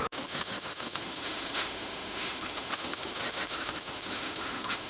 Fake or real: fake